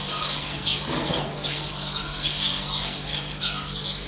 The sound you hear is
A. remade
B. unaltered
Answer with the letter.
A